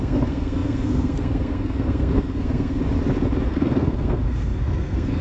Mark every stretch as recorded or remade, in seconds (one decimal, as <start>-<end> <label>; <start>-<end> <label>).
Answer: 0.0-2.8 remade; 2.8-3.4 recorded; 3.4-5.2 remade